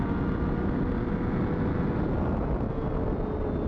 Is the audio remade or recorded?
recorded